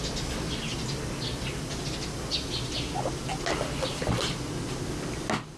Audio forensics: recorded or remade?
recorded